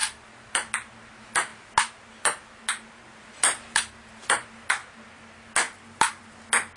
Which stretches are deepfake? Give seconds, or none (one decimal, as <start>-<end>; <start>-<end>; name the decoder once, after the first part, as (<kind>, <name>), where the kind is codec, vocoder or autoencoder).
none